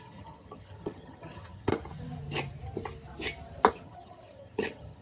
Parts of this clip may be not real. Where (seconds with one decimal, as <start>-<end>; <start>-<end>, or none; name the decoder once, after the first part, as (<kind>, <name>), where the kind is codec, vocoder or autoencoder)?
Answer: 0.0-1.7 (vocoder, HiFi-GAN); 3.7-5.0